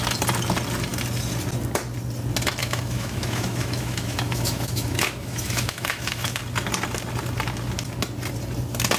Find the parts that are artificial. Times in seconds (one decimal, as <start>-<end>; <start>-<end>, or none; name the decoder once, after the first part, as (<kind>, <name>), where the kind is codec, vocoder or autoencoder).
2.6-6.4 (autoencoder, DAC-VAE)